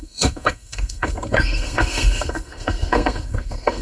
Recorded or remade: remade